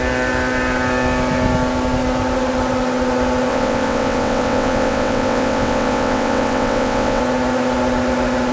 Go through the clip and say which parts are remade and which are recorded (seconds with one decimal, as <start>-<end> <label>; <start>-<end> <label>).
0.0-3.5 recorded; 3.5-7.2 remade; 7.2-8.5 recorded